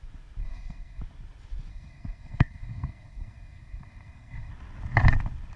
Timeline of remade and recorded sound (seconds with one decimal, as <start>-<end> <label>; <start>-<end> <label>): 0.0-0.4 recorded; 0.4-1.0 remade; 1.0-1.7 recorded; 1.7-4.5 remade; 4.5-5.6 recorded